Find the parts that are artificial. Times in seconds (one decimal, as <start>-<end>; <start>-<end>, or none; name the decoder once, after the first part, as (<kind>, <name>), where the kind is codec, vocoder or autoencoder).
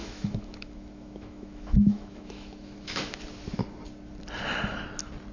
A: 0.0-3.2 (autoencoder, DAC-VAE)